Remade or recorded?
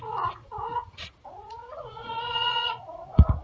remade